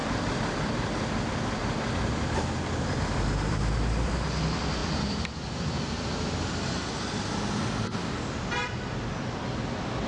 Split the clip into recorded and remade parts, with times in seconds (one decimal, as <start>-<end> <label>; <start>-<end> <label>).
0.0-4.1 remade; 4.1-4.8 recorded; 4.8-8.9 remade; 8.9-10.1 recorded

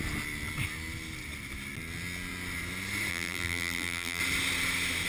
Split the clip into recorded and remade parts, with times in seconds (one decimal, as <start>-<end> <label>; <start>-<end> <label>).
0.0-3.1 recorded; 3.1-4.2 remade; 4.2-5.1 recorded

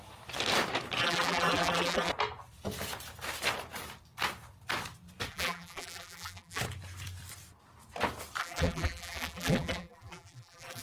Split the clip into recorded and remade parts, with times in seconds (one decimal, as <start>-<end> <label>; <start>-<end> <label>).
0.0-1.0 recorded; 1.0-2.1 remade; 2.1-5.3 recorded; 5.3-6.6 remade; 6.6-8.4 recorded; 8.4-10.8 remade